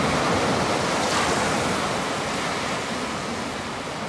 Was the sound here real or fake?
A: real